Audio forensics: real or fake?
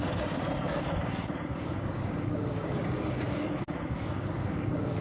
fake